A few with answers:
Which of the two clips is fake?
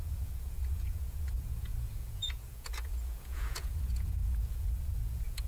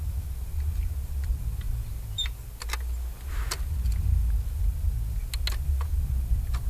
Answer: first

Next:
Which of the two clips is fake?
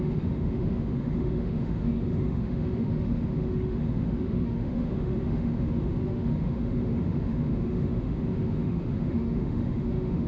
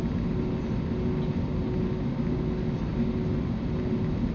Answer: first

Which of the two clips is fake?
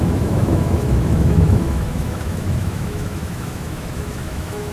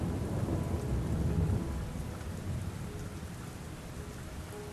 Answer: first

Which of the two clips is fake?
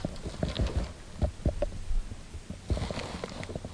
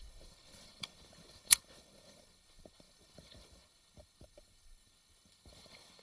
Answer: second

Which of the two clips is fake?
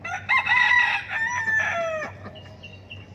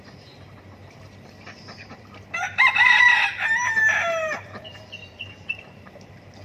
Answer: second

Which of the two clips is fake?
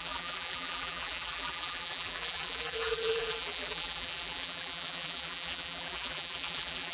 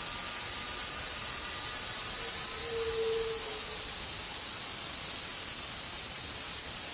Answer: first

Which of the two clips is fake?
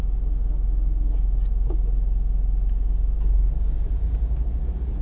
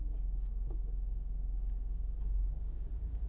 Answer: second